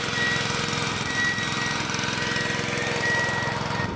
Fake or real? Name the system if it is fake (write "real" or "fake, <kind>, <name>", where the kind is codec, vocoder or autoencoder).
real